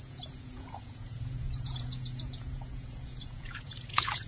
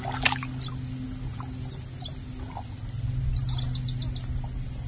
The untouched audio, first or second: second